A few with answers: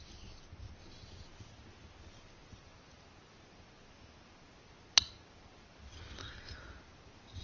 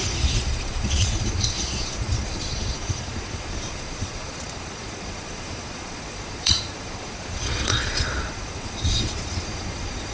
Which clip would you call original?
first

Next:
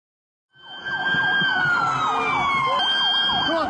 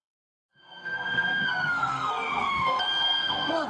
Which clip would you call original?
first